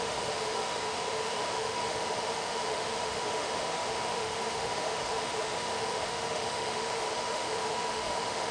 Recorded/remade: remade